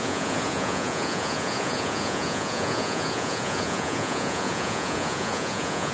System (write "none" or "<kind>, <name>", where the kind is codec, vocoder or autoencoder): vocoder, Vocos